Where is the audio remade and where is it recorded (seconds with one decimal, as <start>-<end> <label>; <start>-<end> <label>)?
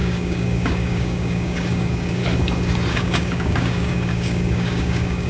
0.0-2.2 remade; 2.2-2.9 recorded; 2.9-5.3 remade